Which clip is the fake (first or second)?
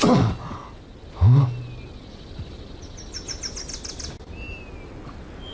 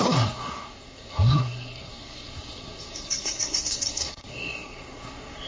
second